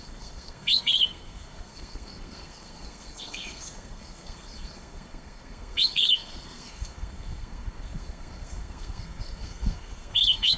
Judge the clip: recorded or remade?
remade